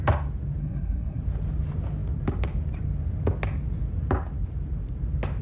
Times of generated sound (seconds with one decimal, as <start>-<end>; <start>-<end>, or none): 0.6-1.2